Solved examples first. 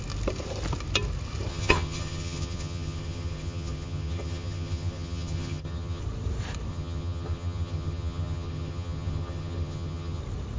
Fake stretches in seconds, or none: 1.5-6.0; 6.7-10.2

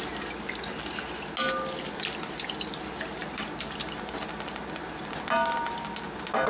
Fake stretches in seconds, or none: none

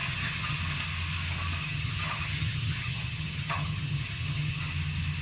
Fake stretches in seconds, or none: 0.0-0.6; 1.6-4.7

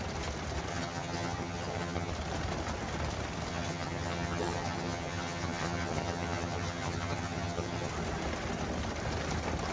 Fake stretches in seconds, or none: 0.7-2.1; 3.5-7.9